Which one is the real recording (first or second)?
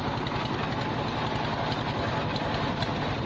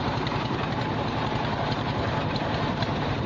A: first